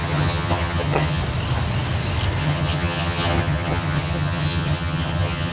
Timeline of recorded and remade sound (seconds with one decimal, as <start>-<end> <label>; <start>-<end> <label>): 0.0-1.2 remade; 1.2-2.4 recorded; 2.4-5.5 remade